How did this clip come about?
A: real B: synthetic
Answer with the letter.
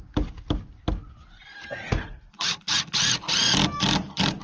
A